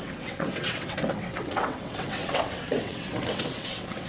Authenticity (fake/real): fake